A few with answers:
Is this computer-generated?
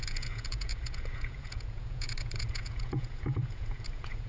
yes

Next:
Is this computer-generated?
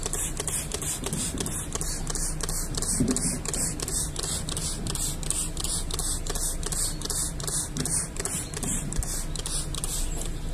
no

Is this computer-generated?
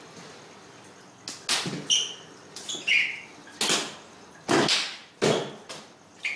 no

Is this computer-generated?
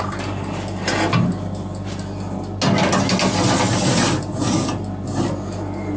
no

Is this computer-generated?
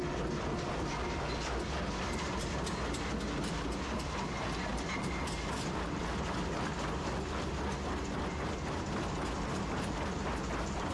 no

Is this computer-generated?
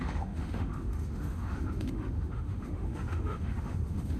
yes